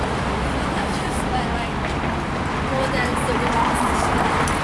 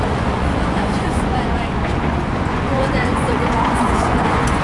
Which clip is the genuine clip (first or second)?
first